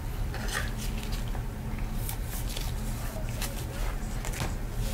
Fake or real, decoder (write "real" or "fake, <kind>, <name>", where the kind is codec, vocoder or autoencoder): real